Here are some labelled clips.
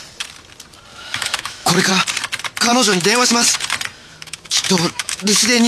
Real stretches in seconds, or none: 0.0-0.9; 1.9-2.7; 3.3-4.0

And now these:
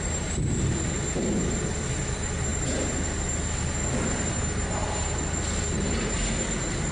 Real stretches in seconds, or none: 0.0-6.9